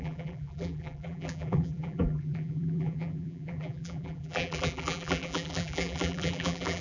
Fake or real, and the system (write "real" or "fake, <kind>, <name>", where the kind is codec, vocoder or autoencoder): fake, vocoder, BigVGAN v2